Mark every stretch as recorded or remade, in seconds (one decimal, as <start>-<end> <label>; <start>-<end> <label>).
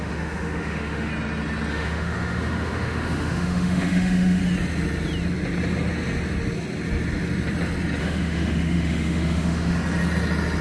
0.0-1.1 remade; 1.1-1.7 recorded; 1.7-4.4 remade; 4.4-8.0 recorded; 8.0-9.8 remade; 9.8-10.6 recorded